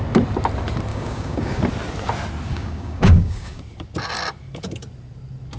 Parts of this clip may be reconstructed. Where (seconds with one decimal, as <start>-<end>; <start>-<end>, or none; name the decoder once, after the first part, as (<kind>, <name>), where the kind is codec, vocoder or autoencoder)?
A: 0.9-1.6 (codec, DAC); 2.5-3.6

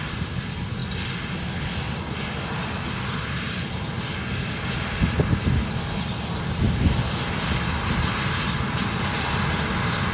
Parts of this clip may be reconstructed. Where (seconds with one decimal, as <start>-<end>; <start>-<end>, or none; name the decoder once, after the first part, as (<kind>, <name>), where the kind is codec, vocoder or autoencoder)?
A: none

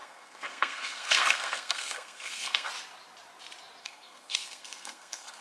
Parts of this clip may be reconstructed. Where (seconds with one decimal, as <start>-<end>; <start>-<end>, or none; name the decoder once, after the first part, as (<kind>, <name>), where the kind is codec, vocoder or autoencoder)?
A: 0.0-2.7 (codec, SNAC); 3.8-5.4

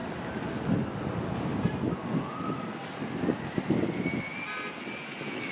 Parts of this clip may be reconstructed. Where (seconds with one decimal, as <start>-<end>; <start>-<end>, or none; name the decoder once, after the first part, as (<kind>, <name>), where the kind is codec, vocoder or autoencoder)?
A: 0.0-1.1 (vocoder, BigVGAN v2); 1.5-3.2

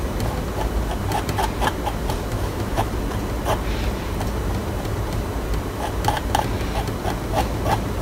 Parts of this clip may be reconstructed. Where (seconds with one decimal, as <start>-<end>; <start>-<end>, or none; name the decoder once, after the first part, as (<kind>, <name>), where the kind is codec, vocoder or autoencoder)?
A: 2.3-2.9 (autoencoder, DAC-VAE)

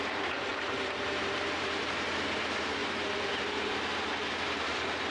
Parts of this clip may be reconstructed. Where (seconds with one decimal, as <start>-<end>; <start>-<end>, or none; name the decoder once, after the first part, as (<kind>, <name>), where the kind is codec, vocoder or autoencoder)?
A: 0.0-5.1 (vocoder, BigVGAN v2)

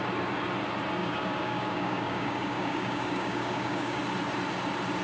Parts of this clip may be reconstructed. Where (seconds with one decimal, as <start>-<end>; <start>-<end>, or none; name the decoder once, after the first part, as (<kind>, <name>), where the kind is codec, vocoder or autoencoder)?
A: 1.0-4.0 (codec, DAC)

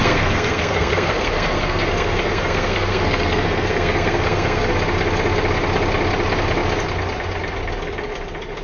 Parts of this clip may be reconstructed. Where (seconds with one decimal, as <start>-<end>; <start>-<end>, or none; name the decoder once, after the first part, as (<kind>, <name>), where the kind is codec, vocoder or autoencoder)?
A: 0.0-4.7 (codec, SNAC)